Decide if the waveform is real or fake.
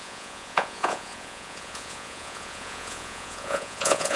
fake